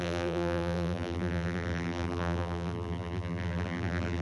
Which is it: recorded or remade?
remade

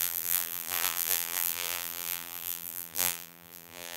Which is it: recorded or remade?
remade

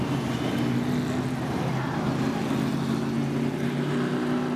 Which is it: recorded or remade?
recorded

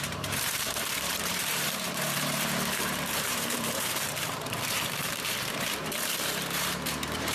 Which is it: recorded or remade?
remade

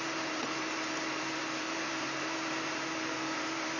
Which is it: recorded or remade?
remade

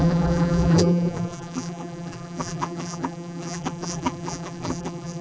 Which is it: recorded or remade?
remade